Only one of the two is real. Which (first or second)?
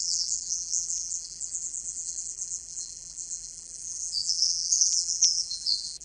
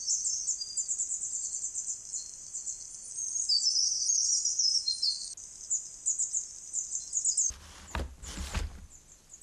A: second